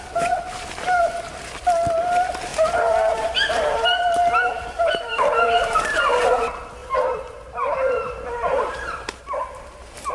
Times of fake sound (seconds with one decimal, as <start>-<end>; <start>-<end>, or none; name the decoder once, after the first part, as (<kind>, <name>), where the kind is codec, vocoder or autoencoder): 2.5-6.1 (vocoder, BigVGAN v2); 6.8-9.0